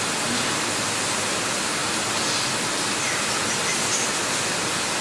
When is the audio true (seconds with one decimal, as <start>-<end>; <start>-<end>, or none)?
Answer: 0.0-5.0